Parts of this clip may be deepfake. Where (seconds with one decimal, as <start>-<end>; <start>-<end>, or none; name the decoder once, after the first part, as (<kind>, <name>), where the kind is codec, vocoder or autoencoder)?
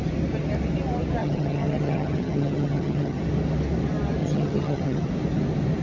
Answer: 1.2-3.2 (vocoder, HiFi-GAN); 4.2-5.1